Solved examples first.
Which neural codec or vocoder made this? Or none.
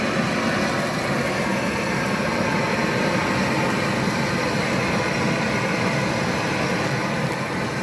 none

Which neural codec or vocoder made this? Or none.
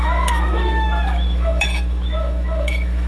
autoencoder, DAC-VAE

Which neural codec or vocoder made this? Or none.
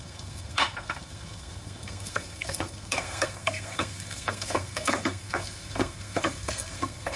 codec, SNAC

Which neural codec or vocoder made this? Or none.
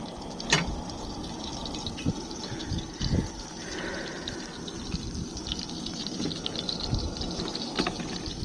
none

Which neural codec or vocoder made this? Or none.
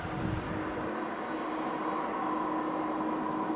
none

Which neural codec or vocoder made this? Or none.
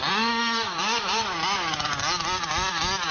none